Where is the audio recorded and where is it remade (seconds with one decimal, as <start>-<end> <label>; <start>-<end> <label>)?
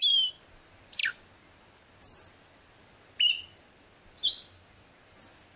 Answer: 0.0-5.6 recorded